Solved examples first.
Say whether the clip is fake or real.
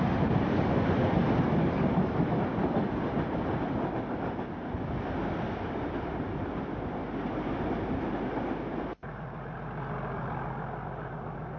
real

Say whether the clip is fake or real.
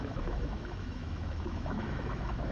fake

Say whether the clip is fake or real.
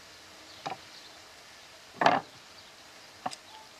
real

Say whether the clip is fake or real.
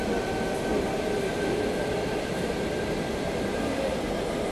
real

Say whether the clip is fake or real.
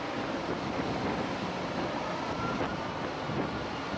real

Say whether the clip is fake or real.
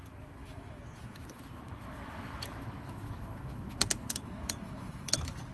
fake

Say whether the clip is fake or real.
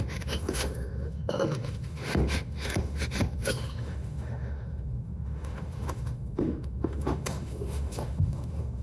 fake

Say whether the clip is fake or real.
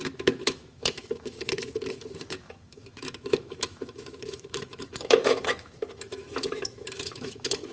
fake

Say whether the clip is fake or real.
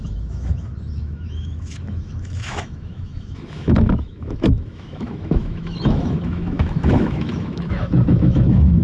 fake